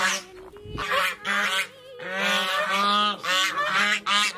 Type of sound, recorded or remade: recorded